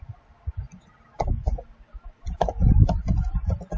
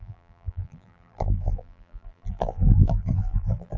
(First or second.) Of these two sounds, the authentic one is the first